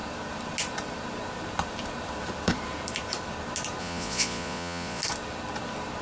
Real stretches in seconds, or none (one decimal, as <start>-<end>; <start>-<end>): 0.0-3.8; 5.0-6.0